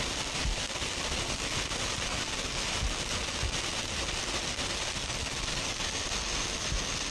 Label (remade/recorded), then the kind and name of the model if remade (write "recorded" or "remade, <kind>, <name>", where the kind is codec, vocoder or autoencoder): recorded